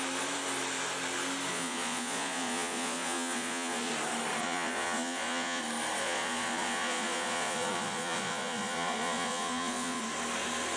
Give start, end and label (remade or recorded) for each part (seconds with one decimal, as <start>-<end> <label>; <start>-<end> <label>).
0.0-1.5 recorded; 1.5-3.9 remade; 3.9-4.4 recorded; 4.4-5.6 remade; 5.6-6.0 recorded; 6.0-10.0 remade; 10.0-10.8 recorded